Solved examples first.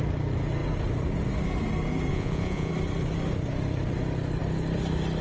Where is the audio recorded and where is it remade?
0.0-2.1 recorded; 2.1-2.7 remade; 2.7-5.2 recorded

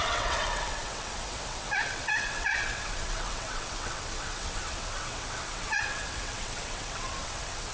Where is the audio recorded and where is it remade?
0.0-7.7 remade

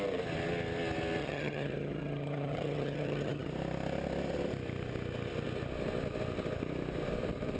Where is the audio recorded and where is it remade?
0.0-1.2 recorded; 1.2-3.5 remade; 3.5-7.6 recorded

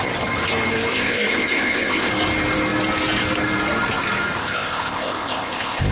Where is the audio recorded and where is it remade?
0.0-0.9 recorded; 0.9-2.1 remade; 2.1-4.4 recorded; 4.4-5.9 remade

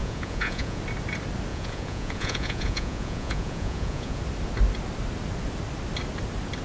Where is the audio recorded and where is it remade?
0.0-0.8 remade; 0.8-1.5 recorded; 1.5-4.2 remade; 4.2-6.6 recorded

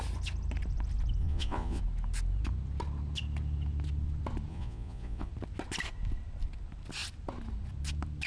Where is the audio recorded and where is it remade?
0.0-1.2 recorded; 1.2-1.8 remade; 1.8-4.5 recorded; 4.5-5.3 remade; 5.3-8.3 recorded

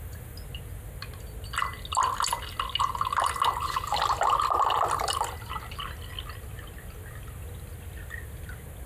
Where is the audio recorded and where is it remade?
0.0-8.9 recorded